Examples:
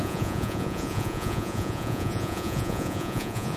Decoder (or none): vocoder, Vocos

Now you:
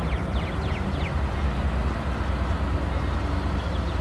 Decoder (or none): none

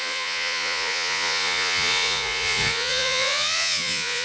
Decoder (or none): vocoder, Vocos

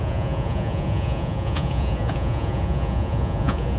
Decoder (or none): vocoder, Vocos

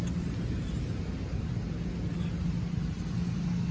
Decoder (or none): none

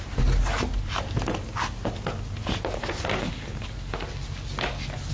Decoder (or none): none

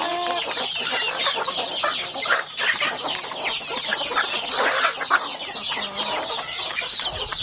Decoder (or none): none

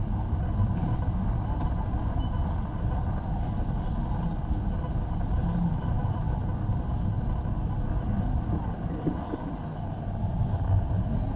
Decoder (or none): none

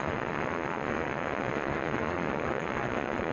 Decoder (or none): vocoder, Vocos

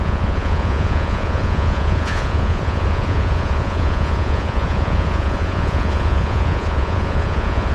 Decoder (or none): vocoder, Vocos